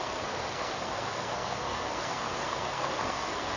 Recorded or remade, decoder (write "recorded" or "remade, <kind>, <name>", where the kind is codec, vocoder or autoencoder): remade, codec, SNAC